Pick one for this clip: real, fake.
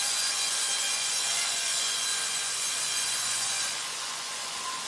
fake